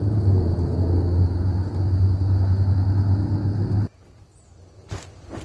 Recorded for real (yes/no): yes